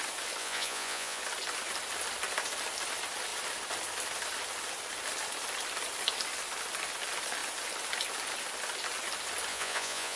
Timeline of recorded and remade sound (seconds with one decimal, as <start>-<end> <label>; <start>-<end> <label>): 0.0-0.4 recorded; 0.4-1.2 remade; 1.2-9.5 recorded; 9.5-10.2 remade